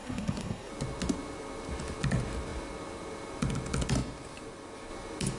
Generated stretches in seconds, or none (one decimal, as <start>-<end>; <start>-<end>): 0.0-0.7